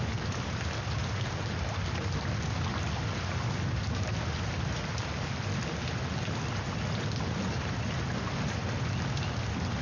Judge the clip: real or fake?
real